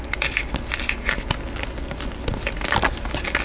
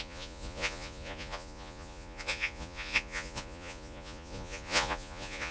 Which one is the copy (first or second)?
second